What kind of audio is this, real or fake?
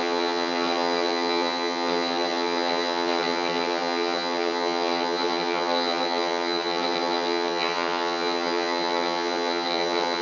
fake